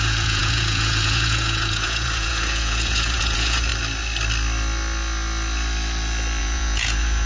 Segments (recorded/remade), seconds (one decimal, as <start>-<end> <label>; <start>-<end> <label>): 0.0-3.7 remade; 3.7-6.4 recorded; 6.4-7.3 remade